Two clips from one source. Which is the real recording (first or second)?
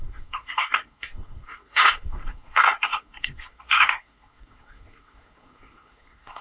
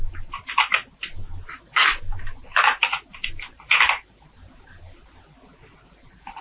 second